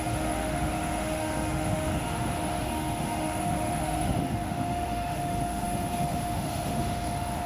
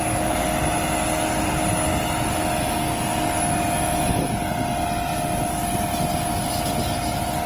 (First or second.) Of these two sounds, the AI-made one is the first